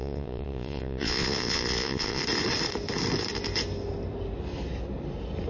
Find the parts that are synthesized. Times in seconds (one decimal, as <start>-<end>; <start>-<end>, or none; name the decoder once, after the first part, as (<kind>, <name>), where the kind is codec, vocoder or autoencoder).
0.0-2.2 (vocoder, Vocos)